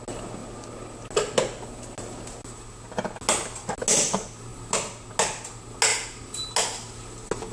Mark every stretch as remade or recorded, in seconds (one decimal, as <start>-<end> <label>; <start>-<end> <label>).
0.0-7.5 recorded